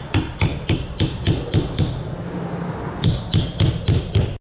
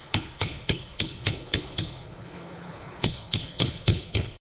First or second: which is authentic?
first